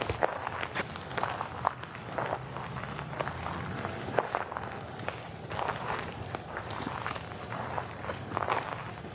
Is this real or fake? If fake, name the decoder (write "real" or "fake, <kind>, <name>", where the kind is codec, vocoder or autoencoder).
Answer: real